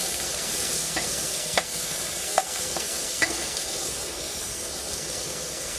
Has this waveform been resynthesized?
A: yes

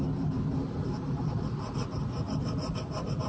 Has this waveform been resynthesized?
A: no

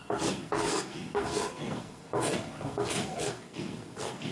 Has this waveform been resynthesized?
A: yes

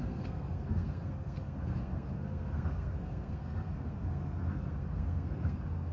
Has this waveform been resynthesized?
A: yes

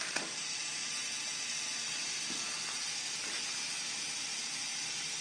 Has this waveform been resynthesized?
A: no